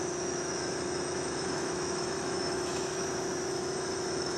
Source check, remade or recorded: remade